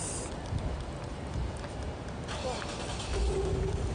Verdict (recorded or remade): recorded